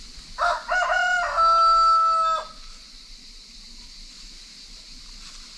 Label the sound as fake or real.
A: real